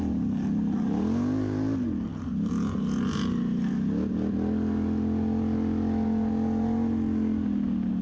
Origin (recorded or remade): recorded